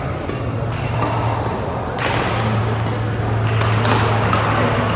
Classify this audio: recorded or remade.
recorded